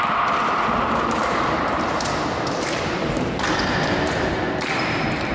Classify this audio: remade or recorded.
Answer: remade